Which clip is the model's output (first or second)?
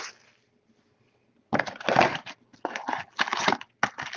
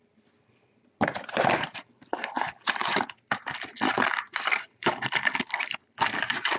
second